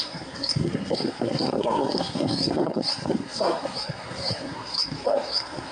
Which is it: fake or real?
fake